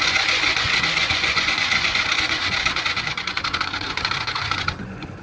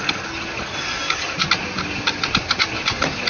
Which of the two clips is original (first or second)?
second